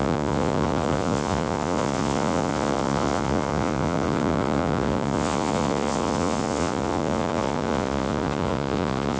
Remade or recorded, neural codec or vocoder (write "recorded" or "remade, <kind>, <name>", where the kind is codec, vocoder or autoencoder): remade, vocoder, Vocos